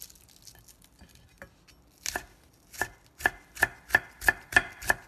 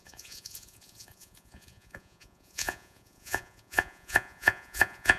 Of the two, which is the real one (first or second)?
first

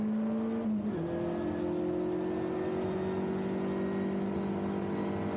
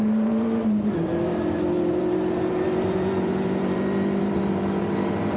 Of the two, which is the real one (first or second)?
first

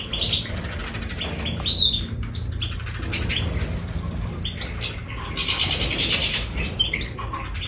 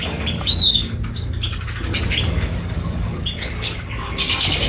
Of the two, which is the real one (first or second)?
first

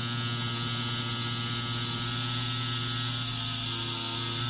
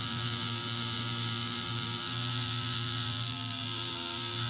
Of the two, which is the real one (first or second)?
first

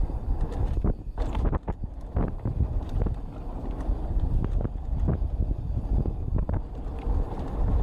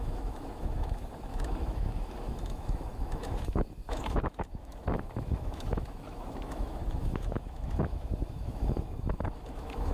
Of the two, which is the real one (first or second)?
first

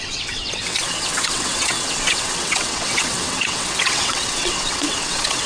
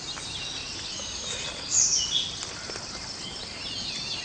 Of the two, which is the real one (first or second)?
second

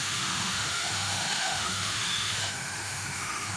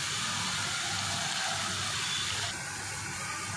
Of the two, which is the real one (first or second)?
second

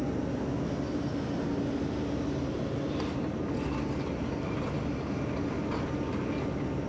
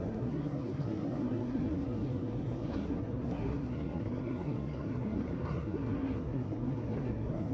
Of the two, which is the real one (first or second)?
first